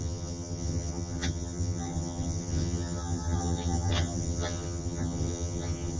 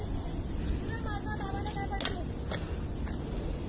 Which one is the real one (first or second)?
second